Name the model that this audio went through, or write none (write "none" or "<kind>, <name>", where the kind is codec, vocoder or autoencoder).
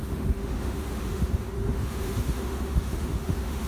autoencoder, DAC-VAE